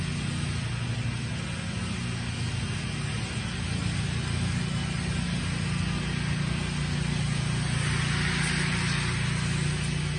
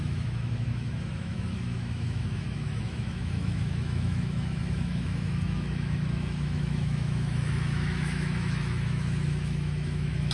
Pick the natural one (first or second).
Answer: first